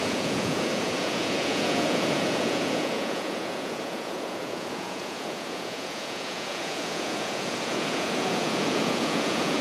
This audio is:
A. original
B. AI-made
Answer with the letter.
B